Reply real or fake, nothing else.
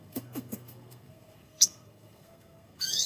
fake